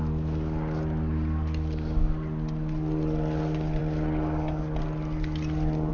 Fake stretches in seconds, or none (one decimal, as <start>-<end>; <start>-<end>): none